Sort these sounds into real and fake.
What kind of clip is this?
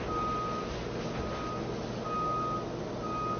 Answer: real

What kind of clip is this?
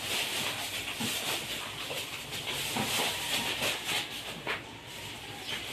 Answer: real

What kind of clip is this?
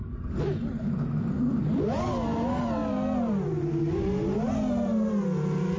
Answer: real